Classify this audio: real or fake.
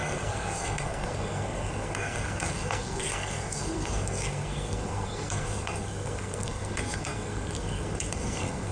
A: fake